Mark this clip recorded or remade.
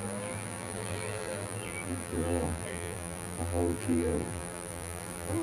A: remade